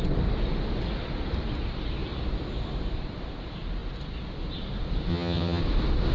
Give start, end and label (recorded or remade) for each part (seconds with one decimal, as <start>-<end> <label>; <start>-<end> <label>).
0.0-5.1 recorded; 5.1-5.6 remade; 5.6-6.1 recorded